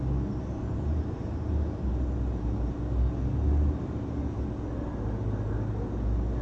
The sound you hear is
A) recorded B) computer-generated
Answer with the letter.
A